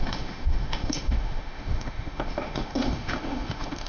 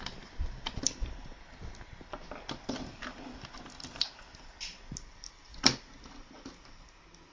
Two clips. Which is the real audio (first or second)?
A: second